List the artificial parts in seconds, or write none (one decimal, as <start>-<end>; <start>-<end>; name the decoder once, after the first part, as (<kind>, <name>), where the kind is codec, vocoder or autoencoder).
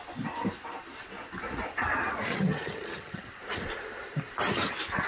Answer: 2.3-3.2 (vocoder, HiFi-GAN)